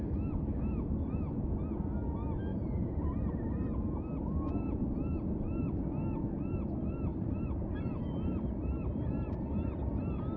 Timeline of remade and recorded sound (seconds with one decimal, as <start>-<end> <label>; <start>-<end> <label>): 0.0-2.5 recorded; 2.5-3.2 remade; 3.2-7.1 recorded; 7.1-9.9 remade; 9.9-10.4 recorded